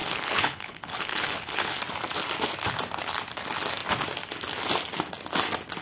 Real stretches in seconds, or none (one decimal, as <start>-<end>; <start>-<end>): 1.8-5.8